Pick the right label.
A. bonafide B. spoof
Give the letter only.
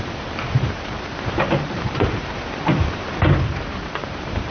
B